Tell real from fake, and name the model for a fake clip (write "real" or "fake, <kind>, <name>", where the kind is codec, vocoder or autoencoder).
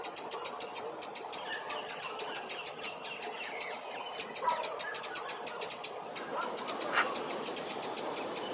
real